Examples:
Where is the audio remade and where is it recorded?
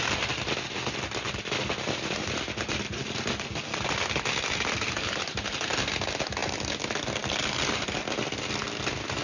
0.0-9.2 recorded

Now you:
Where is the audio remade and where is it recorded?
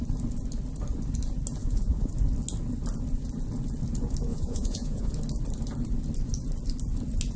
0.0-1.6 recorded; 1.6-2.1 remade; 2.1-4.3 recorded; 4.3-5.1 remade; 5.1-7.4 recorded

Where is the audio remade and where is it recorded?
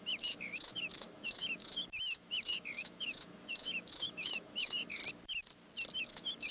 0.0-5.0 remade; 5.0-6.0 recorded; 6.0-6.5 remade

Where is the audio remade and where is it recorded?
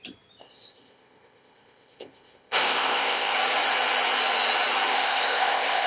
0.0-0.4 recorded; 0.4-3.3 remade; 3.3-4.9 recorded; 4.9-5.9 remade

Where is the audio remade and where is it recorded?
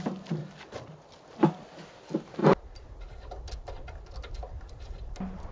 0.0-5.5 recorded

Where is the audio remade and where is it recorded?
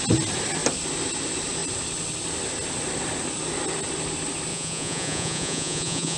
0.0-4.5 recorded; 4.5-6.2 remade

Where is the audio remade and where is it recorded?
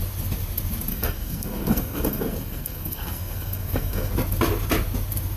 0.0-0.9 recorded; 0.9-4.1 remade; 4.1-5.4 recorded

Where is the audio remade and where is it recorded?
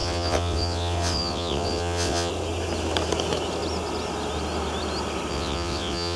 0.0-2.3 remade; 2.3-5.3 recorded; 5.3-6.2 remade